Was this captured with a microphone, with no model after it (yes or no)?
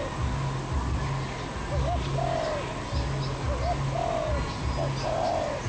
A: yes